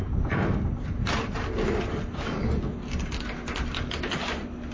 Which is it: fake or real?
real